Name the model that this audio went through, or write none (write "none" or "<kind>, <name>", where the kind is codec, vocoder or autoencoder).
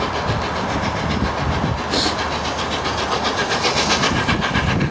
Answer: none